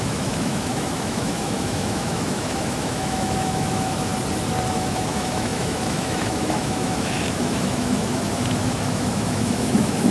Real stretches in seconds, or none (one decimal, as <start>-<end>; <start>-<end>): 4.1-4.7